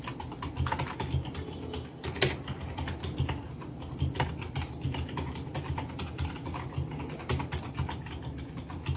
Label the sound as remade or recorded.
recorded